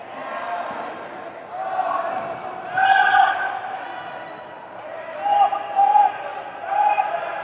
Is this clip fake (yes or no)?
no